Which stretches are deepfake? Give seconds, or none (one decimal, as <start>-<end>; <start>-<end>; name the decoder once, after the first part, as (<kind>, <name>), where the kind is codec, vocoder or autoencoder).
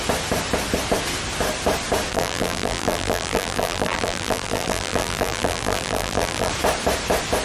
2.1-6.5 (vocoder, BigVGAN v2)